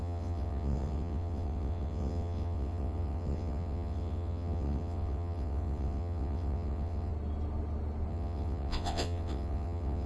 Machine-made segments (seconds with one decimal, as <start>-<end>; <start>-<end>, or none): 0.0-7.1; 8.1-10.1

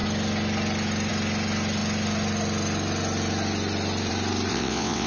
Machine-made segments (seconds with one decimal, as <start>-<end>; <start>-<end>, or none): 4.5-5.1

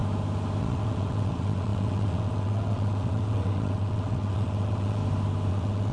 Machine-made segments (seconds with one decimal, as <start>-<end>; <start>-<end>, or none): 0.6-5.0; 5.5-5.9

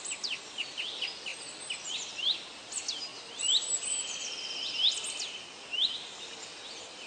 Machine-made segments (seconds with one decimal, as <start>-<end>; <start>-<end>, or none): none

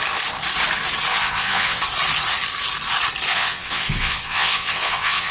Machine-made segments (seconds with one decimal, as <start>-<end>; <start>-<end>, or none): 1.1-1.8; 3.3-5.3

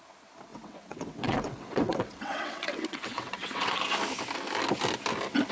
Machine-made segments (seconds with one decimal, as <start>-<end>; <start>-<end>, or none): 0.5-3.8